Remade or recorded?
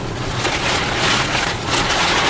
remade